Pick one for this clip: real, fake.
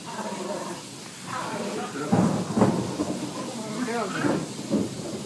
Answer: real